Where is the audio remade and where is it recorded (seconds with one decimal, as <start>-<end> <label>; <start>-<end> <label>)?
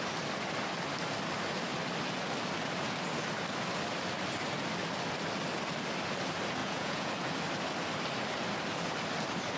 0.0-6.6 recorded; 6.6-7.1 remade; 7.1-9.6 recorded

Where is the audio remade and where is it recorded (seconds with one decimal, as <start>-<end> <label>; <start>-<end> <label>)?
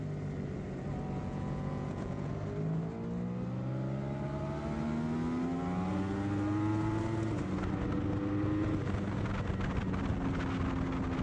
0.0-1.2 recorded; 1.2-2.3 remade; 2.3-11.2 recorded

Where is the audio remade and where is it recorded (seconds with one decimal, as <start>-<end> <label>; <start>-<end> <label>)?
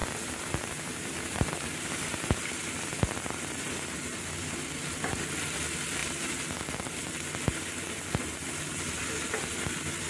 0.0-10.1 recorded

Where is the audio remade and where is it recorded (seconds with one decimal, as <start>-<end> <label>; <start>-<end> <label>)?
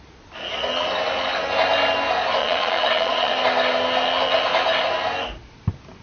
0.0-2.4 recorded; 2.4-3.3 remade; 3.3-6.0 recorded